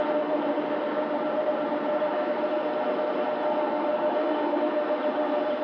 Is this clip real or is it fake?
fake